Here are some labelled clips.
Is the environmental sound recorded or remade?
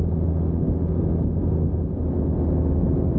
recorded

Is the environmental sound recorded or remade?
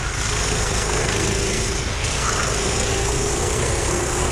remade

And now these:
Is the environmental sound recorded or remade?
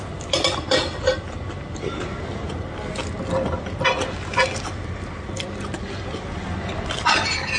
recorded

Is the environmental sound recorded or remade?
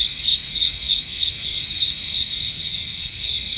remade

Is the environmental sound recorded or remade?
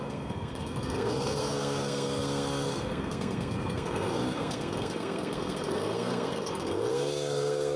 remade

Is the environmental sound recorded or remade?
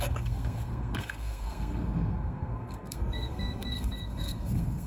remade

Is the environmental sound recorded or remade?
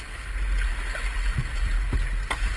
recorded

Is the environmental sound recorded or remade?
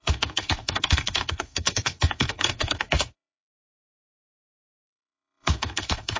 remade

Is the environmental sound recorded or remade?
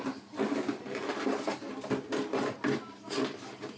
recorded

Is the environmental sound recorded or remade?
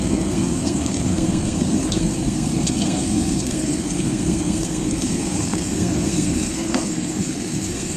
remade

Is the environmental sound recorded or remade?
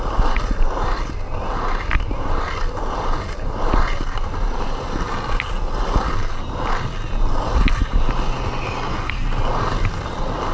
recorded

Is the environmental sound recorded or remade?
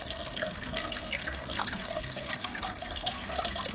remade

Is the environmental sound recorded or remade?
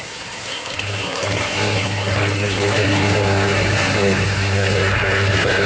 remade